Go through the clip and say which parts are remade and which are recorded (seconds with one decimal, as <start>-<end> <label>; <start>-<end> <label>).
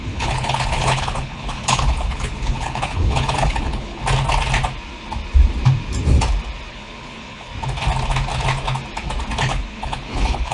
0.0-4.0 remade; 4.0-6.7 recorded; 6.7-7.5 remade; 7.5-9.4 recorded; 9.4-10.5 remade